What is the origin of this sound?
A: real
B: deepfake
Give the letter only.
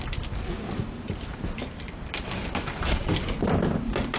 A